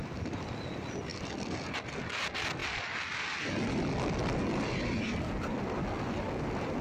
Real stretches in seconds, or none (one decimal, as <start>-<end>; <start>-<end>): 0.0-1.1; 2.2-6.8